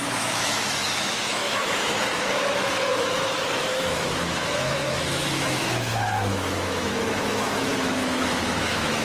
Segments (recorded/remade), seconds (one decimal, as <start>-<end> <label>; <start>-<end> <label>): 0.0-9.0 remade